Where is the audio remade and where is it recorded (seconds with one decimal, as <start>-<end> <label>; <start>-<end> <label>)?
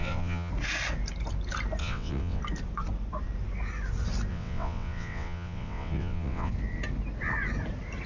0.0-0.5 remade; 0.5-1.8 recorded; 1.8-2.4 remade; 2.4-4.3 recorded; 4.3-6.5 remade; 6.5-8.1 recorded